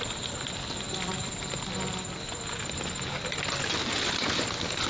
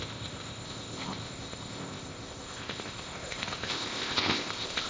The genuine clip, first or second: first